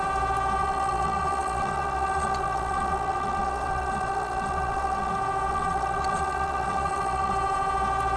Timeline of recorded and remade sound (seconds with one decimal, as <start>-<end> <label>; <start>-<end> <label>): 0.0-0.6 recorded; 0.6-5.1 remade; 5.1-5.5 recorded; 5.5-7.3 remade; 7.3-8.2 recorded